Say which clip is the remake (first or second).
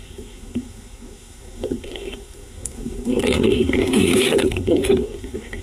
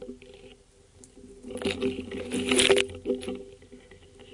first